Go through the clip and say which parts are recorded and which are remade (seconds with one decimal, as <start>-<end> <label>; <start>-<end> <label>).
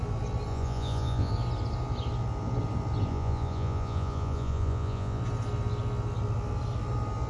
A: 0.0-0.5 recorded; 0.5-1.3 remade; 1.3-3.1 recorded; 3.1-5.2 remade; 5.2-7.3 recorded